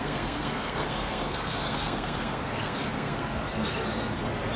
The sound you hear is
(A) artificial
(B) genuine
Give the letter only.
A